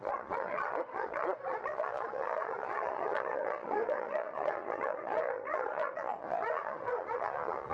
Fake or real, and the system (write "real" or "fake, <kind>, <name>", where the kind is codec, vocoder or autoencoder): fake, vocoder, Vocos